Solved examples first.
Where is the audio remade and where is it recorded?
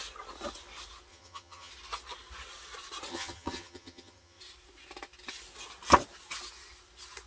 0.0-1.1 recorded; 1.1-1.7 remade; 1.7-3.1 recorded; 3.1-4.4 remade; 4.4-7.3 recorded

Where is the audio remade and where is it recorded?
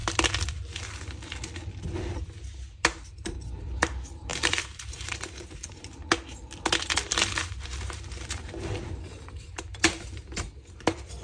0.0-3.0 recorded; 3.0-6.0 remade; 6.0-7.4 recorded; 7.4-11.2 remade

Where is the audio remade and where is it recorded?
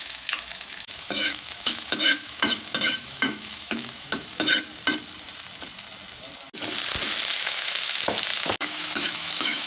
0.0-4.5 remade; 4.5-7.3 recorded; 7.3-9.7 remade